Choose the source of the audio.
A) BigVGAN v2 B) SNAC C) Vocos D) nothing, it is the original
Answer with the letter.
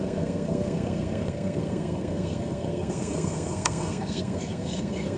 B